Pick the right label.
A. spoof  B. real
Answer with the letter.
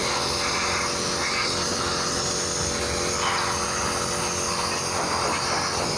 B